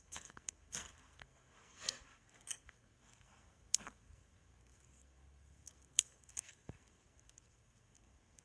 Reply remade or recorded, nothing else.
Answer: remade